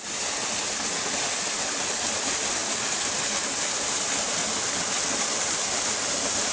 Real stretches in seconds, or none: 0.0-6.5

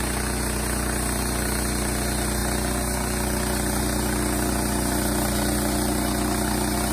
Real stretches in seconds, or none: 0.0-6.9

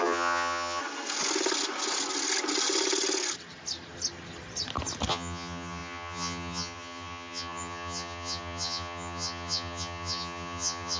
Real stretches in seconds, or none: 0.8-5.1

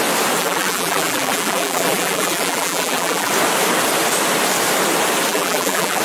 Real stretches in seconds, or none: 0.0-0.4; 3.3-5.3

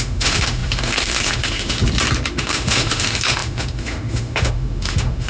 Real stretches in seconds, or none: 1.8-2.3

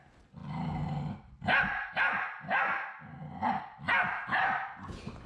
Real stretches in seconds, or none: 0.0-5.3

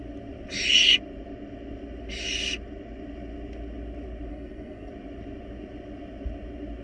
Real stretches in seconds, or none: 0.0-4.3; 4.9-6.8